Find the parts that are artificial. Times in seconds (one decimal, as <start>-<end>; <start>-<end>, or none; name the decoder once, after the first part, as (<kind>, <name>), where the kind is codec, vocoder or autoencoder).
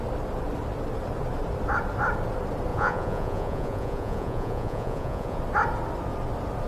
2.7-5.4 (vocoder, Vocos)